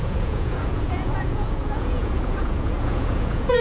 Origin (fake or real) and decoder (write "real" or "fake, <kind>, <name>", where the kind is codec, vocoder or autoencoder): fake, vocoder, Vocos